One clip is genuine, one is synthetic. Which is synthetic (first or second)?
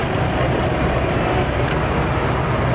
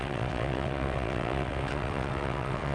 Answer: second